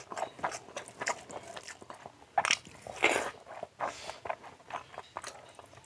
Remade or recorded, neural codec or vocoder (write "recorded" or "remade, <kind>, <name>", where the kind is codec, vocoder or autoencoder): recorded